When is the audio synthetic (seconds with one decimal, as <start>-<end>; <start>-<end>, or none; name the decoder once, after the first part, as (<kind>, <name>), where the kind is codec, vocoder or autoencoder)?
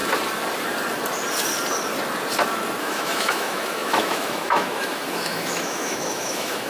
2.8-6.7 (autoencoder, DAC-VAE)